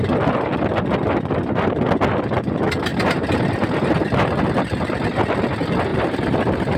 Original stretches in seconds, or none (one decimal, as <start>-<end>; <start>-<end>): 0.0-2.9; 4.4-5.9